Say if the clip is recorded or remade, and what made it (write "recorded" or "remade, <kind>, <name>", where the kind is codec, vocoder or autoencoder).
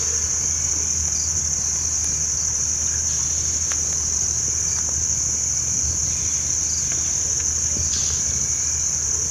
recorded